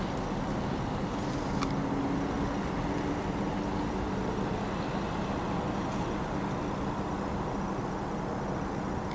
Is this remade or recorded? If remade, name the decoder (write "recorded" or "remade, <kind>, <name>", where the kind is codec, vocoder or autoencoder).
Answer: recorded